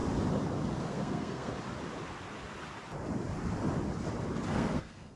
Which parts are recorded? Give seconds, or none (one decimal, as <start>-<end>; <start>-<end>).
0.0-0.8; 1.5-4.5